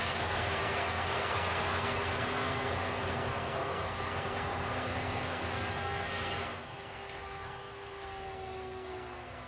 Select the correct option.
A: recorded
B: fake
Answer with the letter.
B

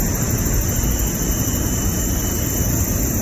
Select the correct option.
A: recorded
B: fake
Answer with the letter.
A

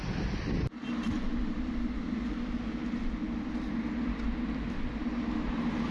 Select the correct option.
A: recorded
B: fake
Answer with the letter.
A